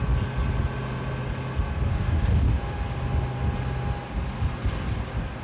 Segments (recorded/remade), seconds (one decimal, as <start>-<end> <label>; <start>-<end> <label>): 0.0-1.9 recorded; 1.9-2.6 remade; 2.6-5.4 recorded